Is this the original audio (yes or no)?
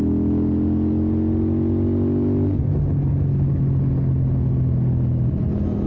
yes